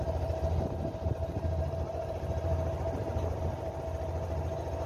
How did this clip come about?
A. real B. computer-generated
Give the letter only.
A